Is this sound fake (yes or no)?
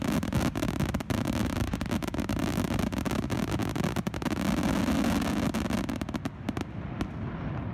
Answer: no